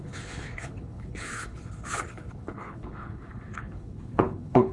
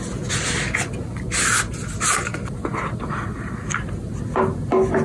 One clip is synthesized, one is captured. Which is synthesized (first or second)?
first